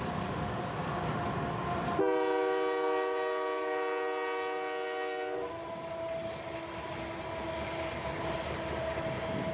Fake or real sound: real